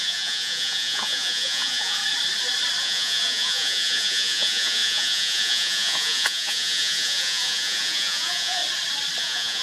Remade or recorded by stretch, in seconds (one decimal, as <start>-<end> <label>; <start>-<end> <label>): 0.0-2.0 remade; 2.0-2.8 recorded; 2.8-8.6 remade; 8.6-9.2 recorded; 9.2-9.6 remade